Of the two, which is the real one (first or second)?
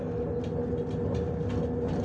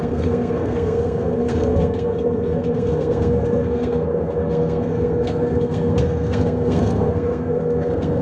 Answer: first